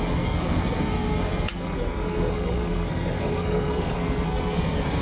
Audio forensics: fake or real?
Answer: fake